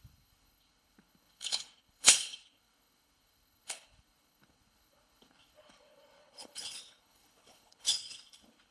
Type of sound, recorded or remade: remade